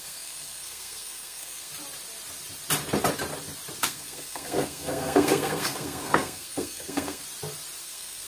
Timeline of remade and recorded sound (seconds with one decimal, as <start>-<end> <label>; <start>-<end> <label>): 0.0-1.7 remade; 1.7-3.8 recorded; 3.8-7.2 remade; 7.2-7.8 recorded; 7.8-8.3 remade